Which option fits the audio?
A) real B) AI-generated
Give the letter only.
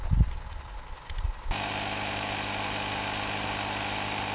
A